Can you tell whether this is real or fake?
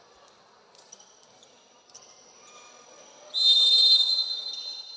real